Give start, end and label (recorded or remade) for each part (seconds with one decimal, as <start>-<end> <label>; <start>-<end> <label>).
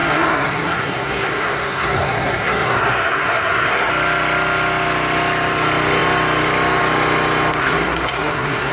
0.0-3.9 remade; 3.9-7.6 recorded; 7.6-8.7 remade